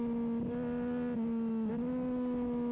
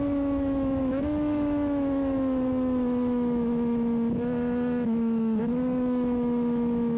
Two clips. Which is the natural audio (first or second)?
first